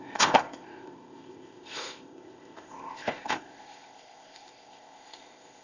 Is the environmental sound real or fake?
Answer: fake